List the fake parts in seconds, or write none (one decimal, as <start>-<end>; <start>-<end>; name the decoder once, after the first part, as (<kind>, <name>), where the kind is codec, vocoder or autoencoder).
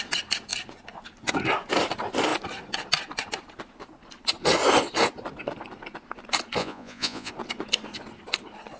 6.6-7.3 (vocoder, Vocos)